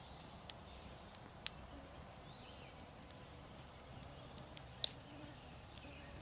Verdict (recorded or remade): remade